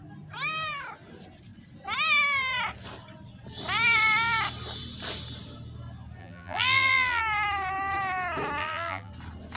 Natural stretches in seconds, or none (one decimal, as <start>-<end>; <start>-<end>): 0.0-6.2; 7.2-8.6; 9.1-9.6